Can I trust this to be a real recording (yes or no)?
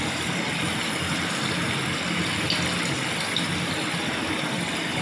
yes